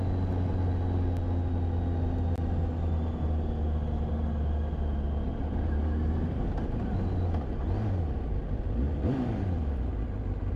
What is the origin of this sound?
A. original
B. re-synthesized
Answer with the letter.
A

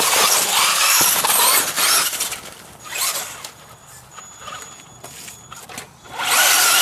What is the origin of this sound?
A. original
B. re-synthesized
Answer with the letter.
B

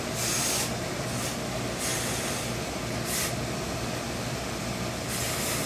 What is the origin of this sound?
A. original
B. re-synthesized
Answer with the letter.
A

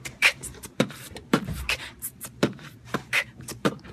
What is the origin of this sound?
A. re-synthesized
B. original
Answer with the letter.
A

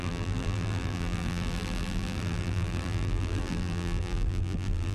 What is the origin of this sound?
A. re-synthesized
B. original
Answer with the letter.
A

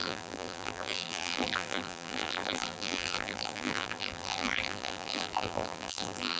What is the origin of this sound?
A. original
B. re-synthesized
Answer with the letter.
B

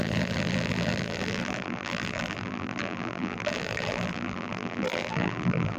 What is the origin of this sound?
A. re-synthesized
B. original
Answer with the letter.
A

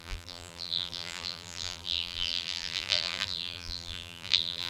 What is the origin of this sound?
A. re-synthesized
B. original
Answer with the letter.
A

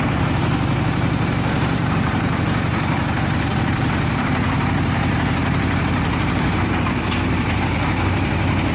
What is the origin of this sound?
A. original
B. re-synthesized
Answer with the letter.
B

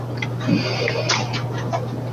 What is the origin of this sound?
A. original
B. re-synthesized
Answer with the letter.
A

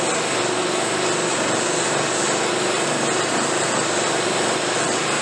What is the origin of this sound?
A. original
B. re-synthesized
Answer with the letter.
B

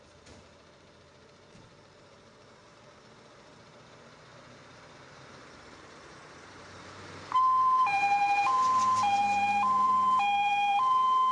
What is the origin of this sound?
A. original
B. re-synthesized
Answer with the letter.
B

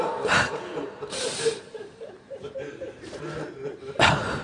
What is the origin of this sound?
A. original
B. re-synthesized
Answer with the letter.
B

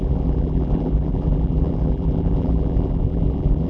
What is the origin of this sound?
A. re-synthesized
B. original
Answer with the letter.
A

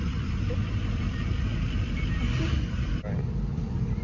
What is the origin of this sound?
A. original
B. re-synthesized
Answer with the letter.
B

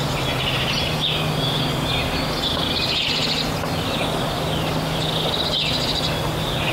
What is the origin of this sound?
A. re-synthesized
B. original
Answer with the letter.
B